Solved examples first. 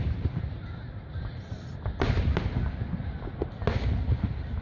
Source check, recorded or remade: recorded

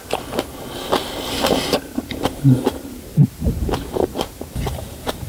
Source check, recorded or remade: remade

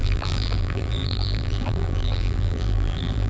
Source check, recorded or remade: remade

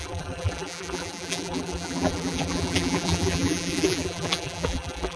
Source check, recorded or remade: remade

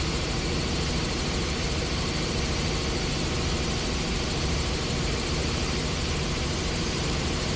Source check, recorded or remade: remade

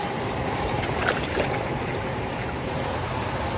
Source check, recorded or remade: remade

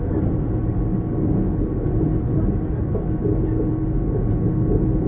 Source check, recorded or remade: recorded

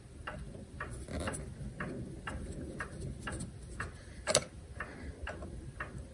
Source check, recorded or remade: remade